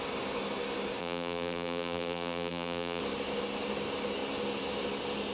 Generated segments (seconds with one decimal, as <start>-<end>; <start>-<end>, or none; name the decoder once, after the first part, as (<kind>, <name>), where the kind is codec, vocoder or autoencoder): 1.0-3.0 (vocoder, BigVGAN v2)